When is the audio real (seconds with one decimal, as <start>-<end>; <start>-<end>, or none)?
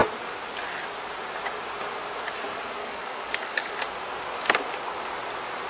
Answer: 0.0-2.8; 3.7-5.7